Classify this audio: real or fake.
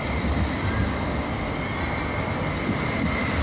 real